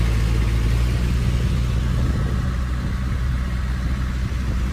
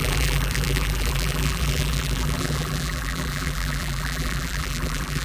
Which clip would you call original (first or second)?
first